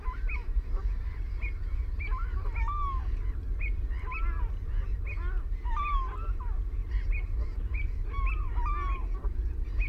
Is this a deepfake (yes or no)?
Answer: no